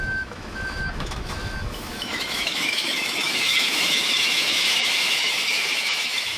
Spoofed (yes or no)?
yes